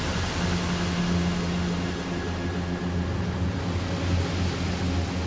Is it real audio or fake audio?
real